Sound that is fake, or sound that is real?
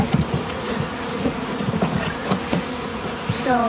fake